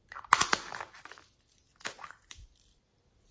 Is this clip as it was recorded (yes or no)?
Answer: yes